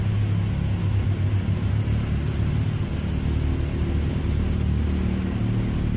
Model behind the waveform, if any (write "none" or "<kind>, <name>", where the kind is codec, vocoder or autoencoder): none